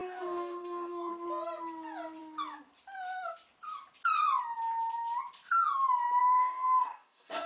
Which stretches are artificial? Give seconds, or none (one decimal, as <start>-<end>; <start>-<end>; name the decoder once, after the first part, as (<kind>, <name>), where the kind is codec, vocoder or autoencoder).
0.0-1.1 (codec, DAC); 6.2-7.5